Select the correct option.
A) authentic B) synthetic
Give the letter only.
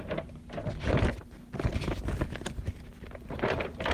A